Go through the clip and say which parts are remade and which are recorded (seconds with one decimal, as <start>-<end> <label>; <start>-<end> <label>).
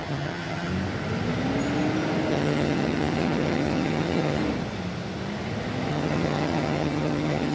0.0-0.7 remade; 0.7-2.3 recorded; 2.3-4.4 remade; 4.4-5.9 recorded; 5.9-7.5 remade